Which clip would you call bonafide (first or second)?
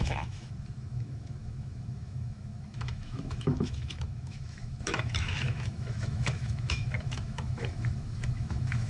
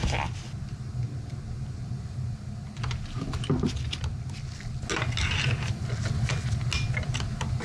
second